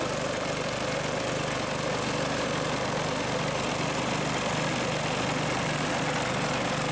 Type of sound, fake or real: real